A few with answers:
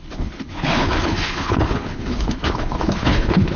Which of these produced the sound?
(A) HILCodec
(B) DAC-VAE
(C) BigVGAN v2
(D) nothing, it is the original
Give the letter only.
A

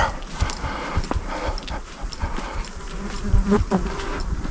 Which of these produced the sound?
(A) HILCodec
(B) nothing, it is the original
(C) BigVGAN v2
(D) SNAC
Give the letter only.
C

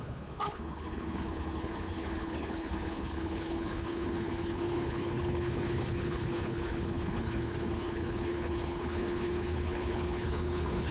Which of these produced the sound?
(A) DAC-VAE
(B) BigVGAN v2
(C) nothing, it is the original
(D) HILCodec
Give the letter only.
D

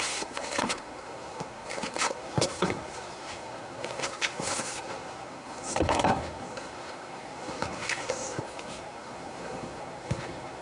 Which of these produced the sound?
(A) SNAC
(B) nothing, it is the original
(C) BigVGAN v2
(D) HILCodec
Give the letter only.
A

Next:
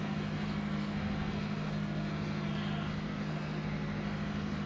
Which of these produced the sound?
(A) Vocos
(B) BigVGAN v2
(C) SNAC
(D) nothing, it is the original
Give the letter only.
C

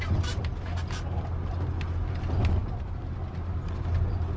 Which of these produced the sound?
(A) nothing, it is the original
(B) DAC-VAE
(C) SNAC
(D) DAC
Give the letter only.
A